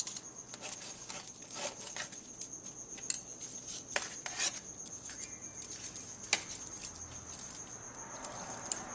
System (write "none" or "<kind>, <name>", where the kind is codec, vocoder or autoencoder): none